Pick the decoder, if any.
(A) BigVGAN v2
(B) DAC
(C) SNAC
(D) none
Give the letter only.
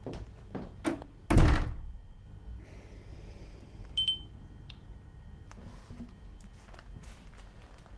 D